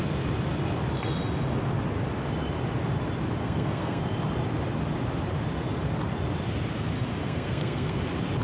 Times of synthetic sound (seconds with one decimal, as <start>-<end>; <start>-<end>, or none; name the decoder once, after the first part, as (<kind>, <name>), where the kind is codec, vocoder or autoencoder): 3.4-4.0 (codec, SNAC); 7.2-8.0